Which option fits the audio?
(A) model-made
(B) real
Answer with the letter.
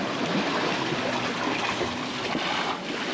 B